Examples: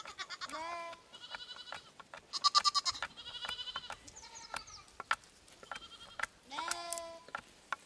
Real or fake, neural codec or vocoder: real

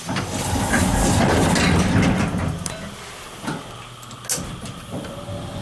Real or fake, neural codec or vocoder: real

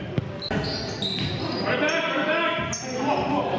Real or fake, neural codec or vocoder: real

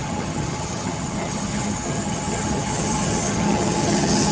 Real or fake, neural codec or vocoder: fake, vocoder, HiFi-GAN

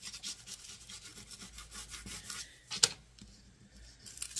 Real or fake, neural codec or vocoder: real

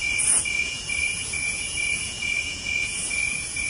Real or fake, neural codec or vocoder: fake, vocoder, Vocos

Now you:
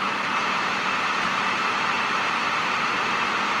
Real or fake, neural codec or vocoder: fake, vocoder, BigVGAN v2